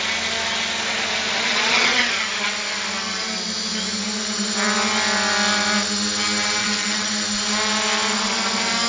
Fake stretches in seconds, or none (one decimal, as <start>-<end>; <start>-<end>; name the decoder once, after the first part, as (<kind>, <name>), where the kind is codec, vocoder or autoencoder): 1.5-2.1 (vocoder, WaveNeXt); 6.6-7.1

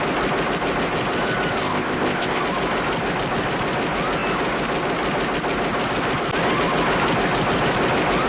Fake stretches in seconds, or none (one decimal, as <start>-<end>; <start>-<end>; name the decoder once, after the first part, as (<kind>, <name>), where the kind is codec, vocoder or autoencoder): 1.6-2.4 (codec, ZipCodec)

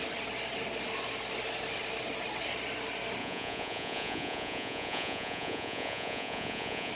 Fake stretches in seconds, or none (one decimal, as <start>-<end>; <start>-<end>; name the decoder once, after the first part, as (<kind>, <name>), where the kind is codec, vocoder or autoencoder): 3.2-6.9 (vocoder, Vocos)

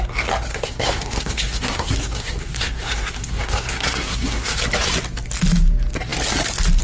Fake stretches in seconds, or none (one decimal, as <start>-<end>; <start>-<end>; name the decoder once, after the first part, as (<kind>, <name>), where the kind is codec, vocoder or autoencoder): 0.5-4.6 (codec, SNAC)